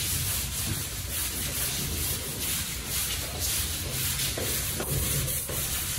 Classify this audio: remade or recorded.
recorded